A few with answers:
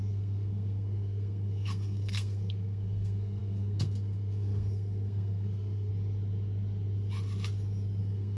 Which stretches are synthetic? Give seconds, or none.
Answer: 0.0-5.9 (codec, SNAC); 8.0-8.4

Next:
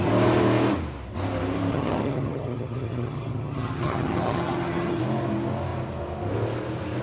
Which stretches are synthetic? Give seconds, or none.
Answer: 1.7-5.0 (vocoder, HiFi-GAN)

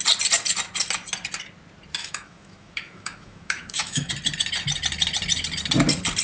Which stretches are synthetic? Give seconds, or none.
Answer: 2.0-4.1 (autoencoder, DAC-VAE)